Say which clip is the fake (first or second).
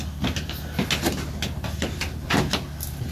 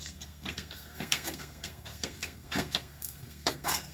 second